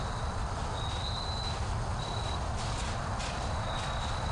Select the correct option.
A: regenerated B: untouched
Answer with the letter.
B